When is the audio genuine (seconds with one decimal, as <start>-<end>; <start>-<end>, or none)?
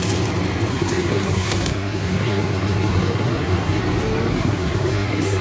0.0-0.7; 3.8-4.3